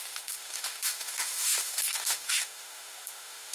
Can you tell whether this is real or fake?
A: fake